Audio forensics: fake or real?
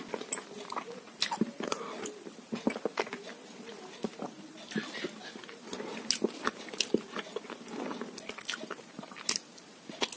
real